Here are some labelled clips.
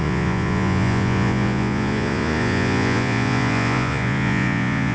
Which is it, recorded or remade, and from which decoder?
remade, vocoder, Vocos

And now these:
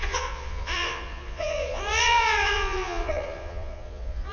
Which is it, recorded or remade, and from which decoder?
remade, vocoder, Vocos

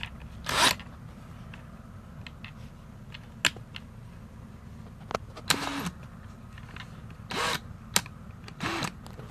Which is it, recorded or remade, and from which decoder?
recorded